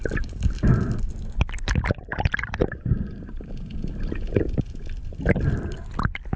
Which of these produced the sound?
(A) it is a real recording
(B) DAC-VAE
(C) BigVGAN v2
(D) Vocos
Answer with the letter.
A